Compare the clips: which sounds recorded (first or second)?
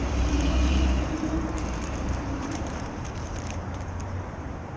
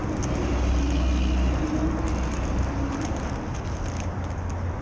second